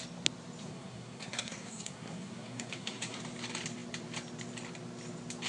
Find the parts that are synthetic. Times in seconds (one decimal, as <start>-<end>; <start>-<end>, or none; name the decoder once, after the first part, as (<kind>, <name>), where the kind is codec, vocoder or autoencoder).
0.6-3.2 (codec, SNAC)